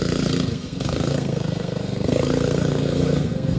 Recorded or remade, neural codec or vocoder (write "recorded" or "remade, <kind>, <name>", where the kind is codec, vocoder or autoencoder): remade, codec, SNAC